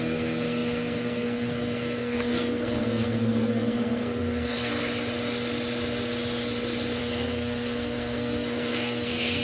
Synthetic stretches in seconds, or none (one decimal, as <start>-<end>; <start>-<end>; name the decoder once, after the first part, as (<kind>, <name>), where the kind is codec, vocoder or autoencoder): 0.0-4.7 (codec, SNAC); 7.0-9.4